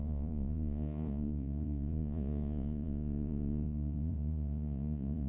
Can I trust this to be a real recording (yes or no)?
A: no